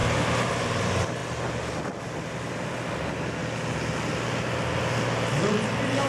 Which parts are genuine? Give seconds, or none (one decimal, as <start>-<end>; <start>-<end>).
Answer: 0.0-6.1